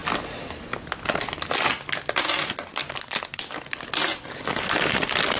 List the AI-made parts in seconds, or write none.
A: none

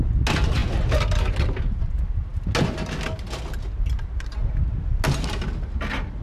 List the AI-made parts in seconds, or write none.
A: none

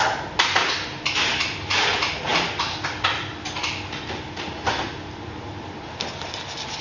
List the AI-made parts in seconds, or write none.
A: none

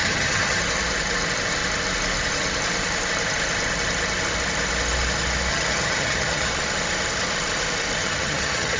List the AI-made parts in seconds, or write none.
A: 0.0-0.6 (vocoder, HiFi-GAN); 5.5-6.5; 8.0-8.8

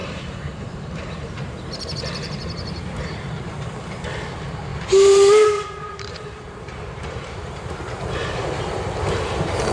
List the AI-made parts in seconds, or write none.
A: 0.0-2.8 (vocoder, BigVGAN v2); 4.7-8.6

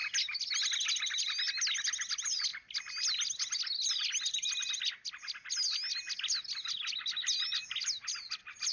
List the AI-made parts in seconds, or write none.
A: none

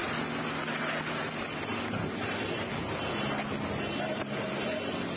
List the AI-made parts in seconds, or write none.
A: none